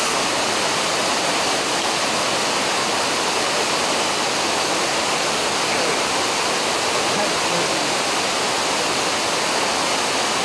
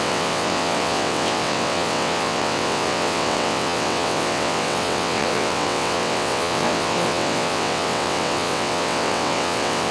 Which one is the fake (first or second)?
second